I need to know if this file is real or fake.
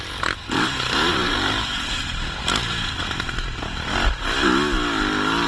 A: real